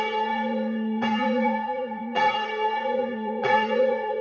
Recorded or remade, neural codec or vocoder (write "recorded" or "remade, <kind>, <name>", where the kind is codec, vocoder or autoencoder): remade, vocoder, Vocos